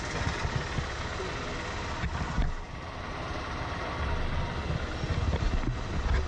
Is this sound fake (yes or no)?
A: no